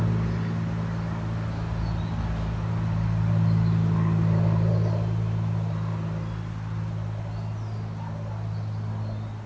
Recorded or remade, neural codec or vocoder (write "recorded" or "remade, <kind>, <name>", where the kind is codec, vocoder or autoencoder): recorded